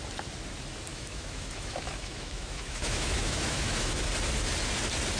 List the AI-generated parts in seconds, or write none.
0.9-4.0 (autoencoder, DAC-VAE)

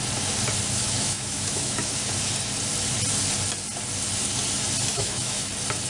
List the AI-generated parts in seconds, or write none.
0.8-2.2 (autoencoder, DAC-VAE); 4.9-5.5

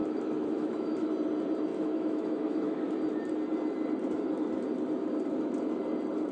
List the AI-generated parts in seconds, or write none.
0.0-1.1 (autoencoder, DAC-VAE); 1.7-2.9

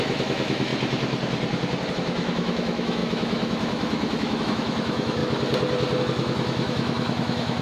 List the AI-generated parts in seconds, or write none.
0.0-0.7 (autoencoder, DAC-VAE); 1.9-5.2; 6.0-7.6

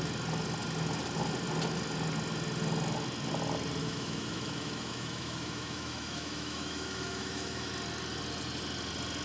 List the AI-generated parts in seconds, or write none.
3.8-7.7 (autoencoder, DAC-VAE)

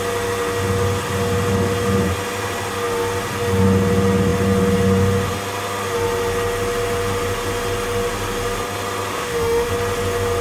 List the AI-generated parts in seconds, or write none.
9.1-9.7 (autoencoder, DAC-VAE)

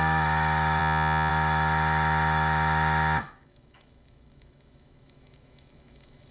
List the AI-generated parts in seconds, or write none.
0.0-0.8 (autoencoder, DAC-VAE); 1.3-6.3